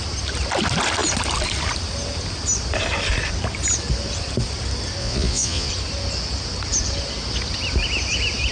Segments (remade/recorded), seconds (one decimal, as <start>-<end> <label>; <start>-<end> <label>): 0.0-5.0 recorded; 5.0-5.7 remade; 5.7-8.5 recorded

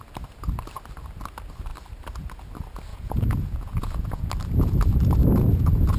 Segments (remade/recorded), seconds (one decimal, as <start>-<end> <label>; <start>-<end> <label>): 0.0-2.9 recorded; 2.9-4.3 remade; 4.3-5.2 recorded; 5.2-6.0 remade

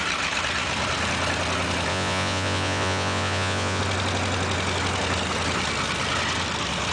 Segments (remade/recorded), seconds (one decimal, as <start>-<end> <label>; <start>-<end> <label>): 0.0-1.9 recorded; 1.9-3.8 remade; 3.8-6.9 recorded

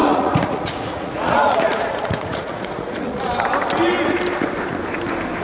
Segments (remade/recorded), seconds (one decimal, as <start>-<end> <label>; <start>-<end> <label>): 0.0-3.2 remade; 3.2-5.4 recorded

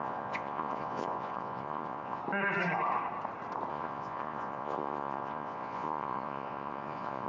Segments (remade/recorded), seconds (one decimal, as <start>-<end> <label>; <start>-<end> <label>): 0.0-2.2 remade; 2.2-3.7 recorded; 3.7-7.3 remade

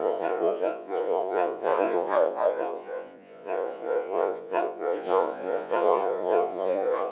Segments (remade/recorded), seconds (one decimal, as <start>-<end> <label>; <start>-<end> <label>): 0.0-7.1 remade

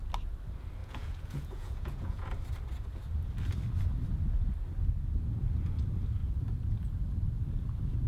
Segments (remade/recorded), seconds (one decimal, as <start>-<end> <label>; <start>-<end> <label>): 0.0-0.8 recorded; 0.8-2.3 remade; 2.3-8.1 recorded